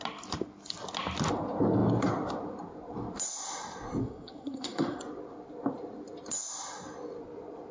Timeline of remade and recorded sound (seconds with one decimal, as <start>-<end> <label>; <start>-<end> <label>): 0.0-4.0 recorded; 4.0-5.0 remade; 5.0-7.7 recorded